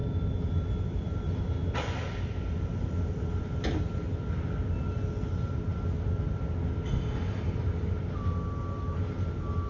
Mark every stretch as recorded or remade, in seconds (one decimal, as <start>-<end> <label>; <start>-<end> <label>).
0.0-9.7 recorded